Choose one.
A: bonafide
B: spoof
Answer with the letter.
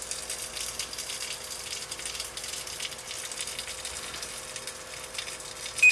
A